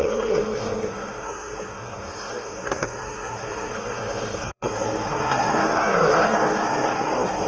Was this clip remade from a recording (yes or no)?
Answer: yes